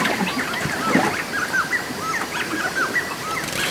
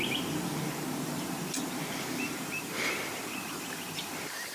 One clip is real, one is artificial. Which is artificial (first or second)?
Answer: second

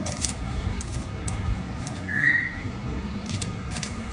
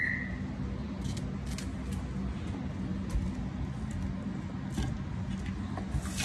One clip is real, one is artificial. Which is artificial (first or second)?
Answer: first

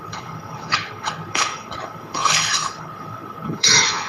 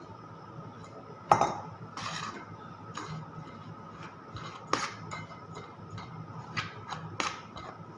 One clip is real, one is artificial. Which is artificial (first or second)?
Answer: first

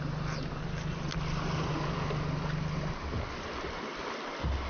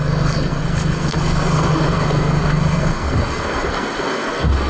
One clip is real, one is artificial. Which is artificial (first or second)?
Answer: second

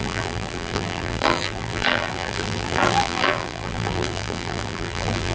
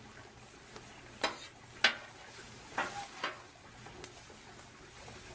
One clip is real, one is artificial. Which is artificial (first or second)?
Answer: first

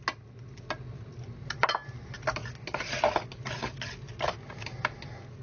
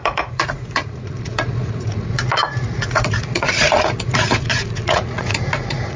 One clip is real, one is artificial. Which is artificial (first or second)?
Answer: second